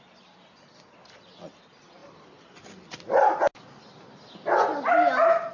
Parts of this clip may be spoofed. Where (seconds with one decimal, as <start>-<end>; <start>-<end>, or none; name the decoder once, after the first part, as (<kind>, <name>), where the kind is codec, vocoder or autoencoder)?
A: none